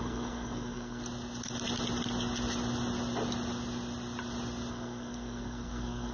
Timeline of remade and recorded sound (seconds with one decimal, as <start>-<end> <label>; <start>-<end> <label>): 0.0-1.0 remade; 1.0-4.7 recorded; 4.7-6.1 remade